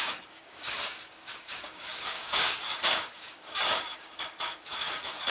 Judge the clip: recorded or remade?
remade